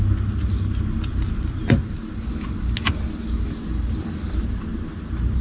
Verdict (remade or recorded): recorded